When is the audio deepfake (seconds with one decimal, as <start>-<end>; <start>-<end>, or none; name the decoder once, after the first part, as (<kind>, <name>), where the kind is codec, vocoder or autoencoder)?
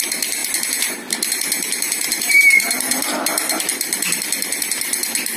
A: 0.4-3.6 (vocoder, BigVGAN v2)